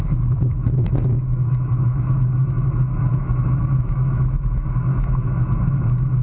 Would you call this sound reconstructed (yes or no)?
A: yes